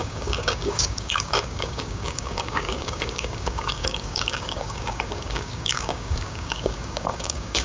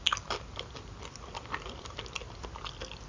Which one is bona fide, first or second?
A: second